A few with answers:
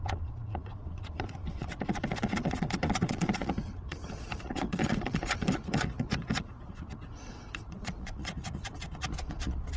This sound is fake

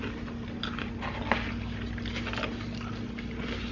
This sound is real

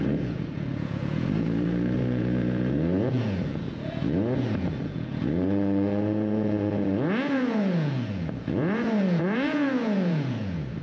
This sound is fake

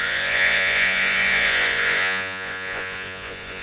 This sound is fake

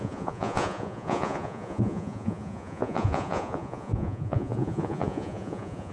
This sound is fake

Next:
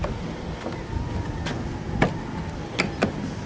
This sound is real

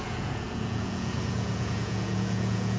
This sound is fake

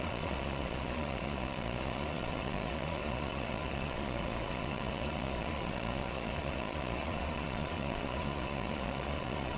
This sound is fake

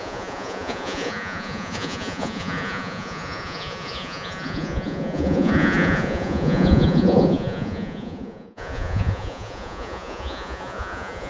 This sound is fake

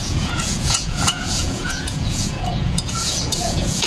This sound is fake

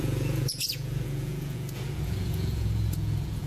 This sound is fake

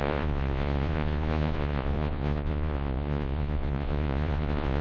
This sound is fake